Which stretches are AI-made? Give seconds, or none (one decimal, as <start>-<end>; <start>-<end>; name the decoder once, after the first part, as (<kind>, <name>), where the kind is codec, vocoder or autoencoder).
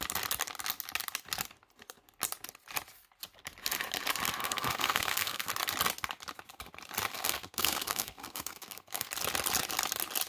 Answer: 4.4-5.5 (codec, SNAC); 7.1-9.1